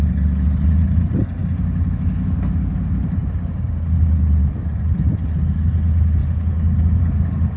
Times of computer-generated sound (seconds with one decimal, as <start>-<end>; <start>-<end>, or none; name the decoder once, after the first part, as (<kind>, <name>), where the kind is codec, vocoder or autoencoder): none